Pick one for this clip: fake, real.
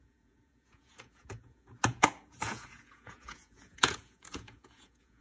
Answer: fake